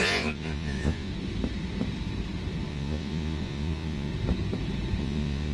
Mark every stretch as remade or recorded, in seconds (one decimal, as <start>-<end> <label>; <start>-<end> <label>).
0.0-1.1 remade; 1.1-2.7 recorded; 2.7-4.1 remade; 4.1-5.0 recorded; 5.0-5.5 remade